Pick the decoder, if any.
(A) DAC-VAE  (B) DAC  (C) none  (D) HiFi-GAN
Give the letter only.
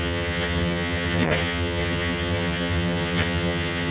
D